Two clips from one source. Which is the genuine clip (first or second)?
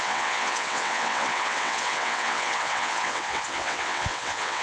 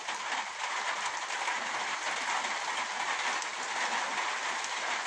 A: second